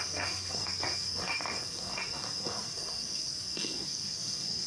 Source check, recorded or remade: remade